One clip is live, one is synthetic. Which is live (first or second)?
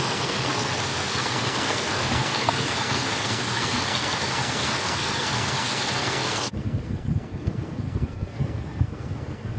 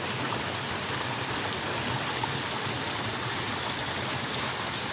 second